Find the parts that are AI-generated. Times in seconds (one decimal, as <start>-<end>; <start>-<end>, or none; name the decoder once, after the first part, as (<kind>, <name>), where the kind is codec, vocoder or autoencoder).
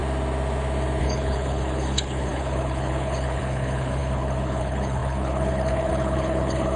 1.0-6.8 (codec, HILCodec)